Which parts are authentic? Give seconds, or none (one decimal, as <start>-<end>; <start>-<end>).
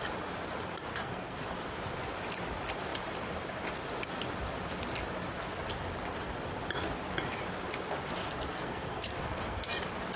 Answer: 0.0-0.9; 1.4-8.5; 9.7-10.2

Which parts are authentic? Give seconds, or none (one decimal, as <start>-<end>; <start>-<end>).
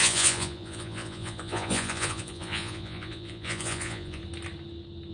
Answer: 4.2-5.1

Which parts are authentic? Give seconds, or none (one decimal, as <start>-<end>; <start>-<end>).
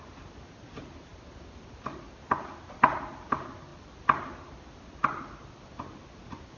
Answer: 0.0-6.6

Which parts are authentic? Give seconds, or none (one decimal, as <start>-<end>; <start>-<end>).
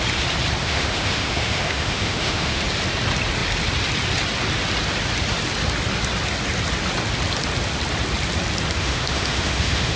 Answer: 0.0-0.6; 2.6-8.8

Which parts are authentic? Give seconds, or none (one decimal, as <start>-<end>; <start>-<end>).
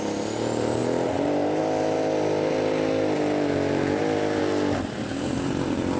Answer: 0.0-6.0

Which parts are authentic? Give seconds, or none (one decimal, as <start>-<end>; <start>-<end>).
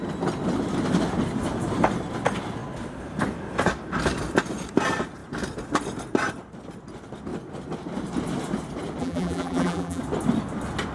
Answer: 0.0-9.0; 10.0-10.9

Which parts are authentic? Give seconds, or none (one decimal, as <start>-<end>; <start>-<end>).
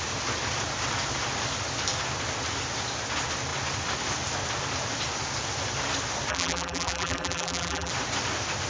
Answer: 0.0-6.3; 7.9-8.7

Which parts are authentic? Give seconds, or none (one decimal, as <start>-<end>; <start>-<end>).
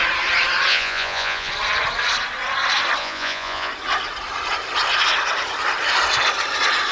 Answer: 0.0-0.7; 1.5-3.0; 3.7-6.9